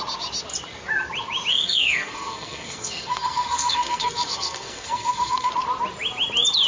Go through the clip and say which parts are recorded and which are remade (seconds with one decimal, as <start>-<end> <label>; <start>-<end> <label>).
0.0-1.5 recorded; 1.5-5.5 remade; 5.5-6.7 recorded